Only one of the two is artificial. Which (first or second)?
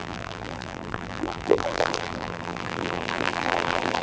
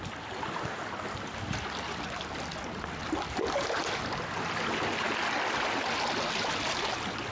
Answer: first